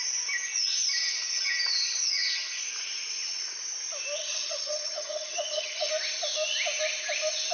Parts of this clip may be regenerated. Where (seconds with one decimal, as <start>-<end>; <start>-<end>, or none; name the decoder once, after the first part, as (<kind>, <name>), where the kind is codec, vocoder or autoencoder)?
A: 1.0-2.6 (vocoder, HiFi-GAN); 4.2-5.9